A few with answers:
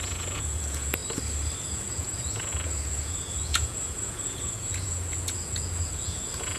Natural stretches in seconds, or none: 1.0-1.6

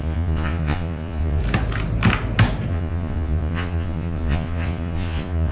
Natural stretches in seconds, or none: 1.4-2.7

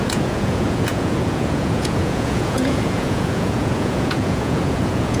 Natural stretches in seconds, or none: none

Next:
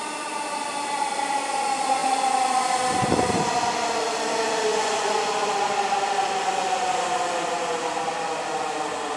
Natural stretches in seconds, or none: 0.0-4.7; 5.5-9.2